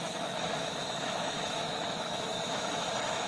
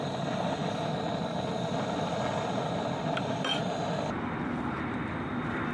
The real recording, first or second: second